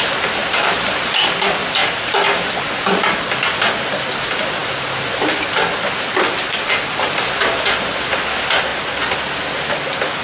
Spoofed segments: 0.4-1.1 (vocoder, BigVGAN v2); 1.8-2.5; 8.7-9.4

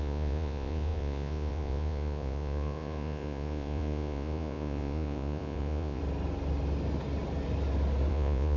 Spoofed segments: 0.0-6.0 (vocoder, Vocos); 8.1-8.6

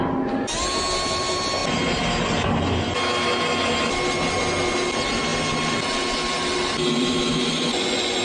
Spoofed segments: 7.3-8.2 (vocoder, Vocos)